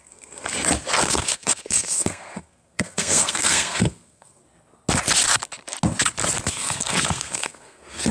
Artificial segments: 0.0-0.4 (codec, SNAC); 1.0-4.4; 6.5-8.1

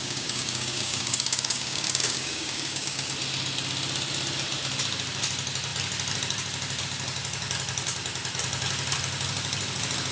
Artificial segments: 0.0-3.1 (codec, DAC)